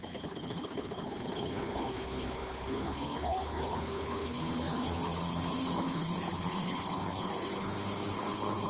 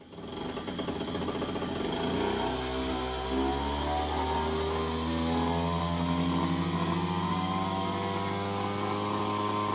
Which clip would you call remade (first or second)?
first